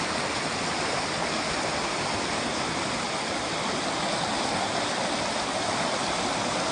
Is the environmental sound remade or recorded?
recorded